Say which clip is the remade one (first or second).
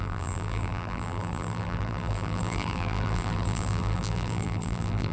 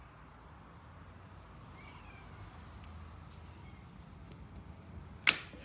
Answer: first